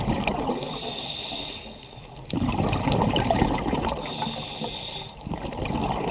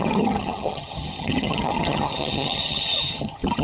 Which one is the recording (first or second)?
first